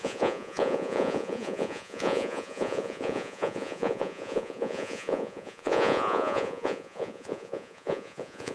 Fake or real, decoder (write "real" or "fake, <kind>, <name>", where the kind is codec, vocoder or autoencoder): fake, vocoder, Vocos